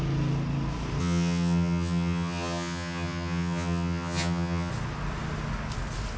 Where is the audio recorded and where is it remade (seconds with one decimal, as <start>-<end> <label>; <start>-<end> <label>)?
0.0-1.0 recorded; 1.0-4.7 remade; 4.7-6.2 recorded